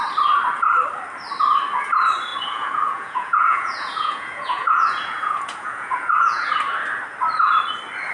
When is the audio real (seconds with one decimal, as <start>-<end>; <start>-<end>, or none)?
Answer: 0.0-2.3; 6.5-8.1